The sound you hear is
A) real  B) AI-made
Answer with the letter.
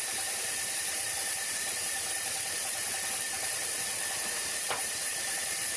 B